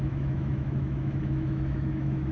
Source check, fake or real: fake